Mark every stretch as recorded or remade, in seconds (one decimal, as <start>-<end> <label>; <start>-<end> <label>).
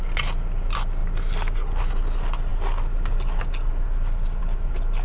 0.0-5.0 recorded